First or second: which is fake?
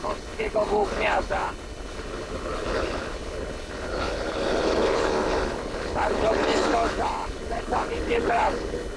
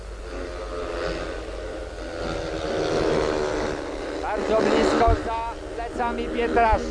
first